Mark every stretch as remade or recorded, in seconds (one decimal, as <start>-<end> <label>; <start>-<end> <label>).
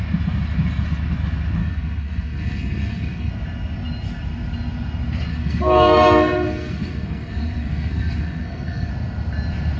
0.0-1.6 recorded; 1.6-3.3 remade; 3.3-5.3 recorded; 5.3-8.9 remade; 8.9-9.8 recorded